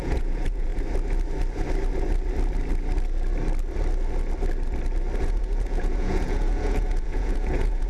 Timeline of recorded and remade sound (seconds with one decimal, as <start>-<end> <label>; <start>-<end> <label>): 0.0-0.7 remade; 0.7-5.2 recorded; 5.2-7.9 remade